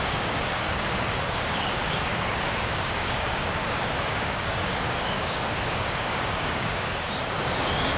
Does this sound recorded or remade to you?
remade